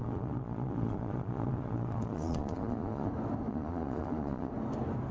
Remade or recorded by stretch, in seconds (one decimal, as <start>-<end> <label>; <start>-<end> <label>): 0.0-3.1 remade; 3.1-3.5 recorded; 3.5-4.5 remade; 4.5-5.1 recorded